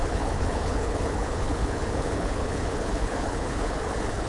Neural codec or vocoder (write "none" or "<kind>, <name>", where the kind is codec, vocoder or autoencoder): codec, HILCodec